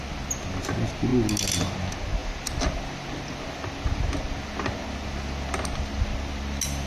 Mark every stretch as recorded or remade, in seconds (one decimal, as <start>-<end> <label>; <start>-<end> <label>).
0.0-6.9 recorded